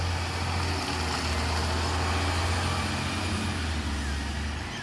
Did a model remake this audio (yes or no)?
no